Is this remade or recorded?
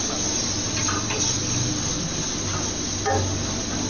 recorded